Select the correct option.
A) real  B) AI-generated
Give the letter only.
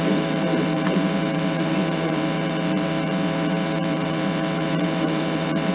B